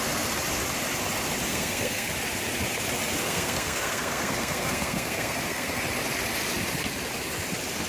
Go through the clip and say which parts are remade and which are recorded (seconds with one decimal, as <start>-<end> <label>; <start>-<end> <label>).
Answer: 0.0-1.5 recorded; 1.5-2.1 remade; 2.1-3.2 recorded; 3.2-5.8 remade; 5.8-7.9 recorded